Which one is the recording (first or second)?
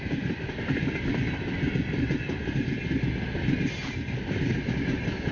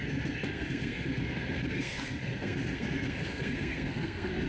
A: first